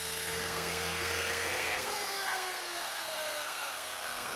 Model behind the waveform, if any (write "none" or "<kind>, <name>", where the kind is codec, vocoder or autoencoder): codec, SNAC